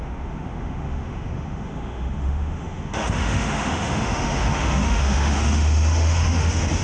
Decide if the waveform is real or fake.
fake